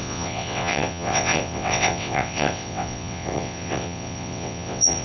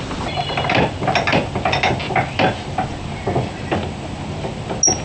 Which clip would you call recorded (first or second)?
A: second